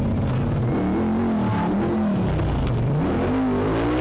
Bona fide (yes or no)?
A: yes